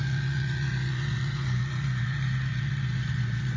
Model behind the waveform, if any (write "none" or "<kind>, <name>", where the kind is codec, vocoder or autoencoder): vocoder, Vocos